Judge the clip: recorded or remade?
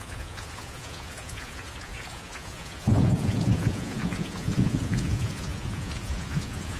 remade